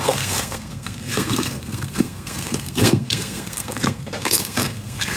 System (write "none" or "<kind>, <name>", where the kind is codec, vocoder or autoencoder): codec, SNAC